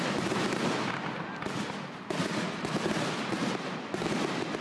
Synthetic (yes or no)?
no